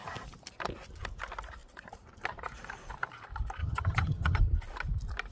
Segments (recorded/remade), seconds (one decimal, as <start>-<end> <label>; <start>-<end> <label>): 0.0-3.6 recorded; 3.6-4.4 remade; 4.4-5.3 recorded